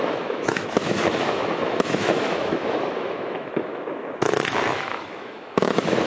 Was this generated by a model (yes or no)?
yes